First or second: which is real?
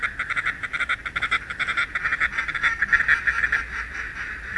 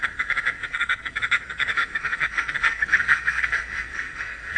first